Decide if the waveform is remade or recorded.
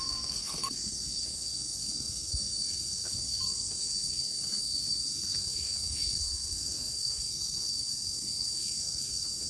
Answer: remade